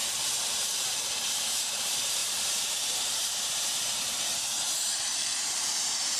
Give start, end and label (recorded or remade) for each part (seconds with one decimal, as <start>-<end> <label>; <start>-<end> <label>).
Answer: 0.0-6.2 remade